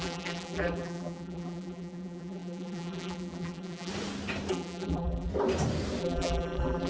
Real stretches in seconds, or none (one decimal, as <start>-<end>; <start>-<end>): 3.9-4.5; 5.3-6.0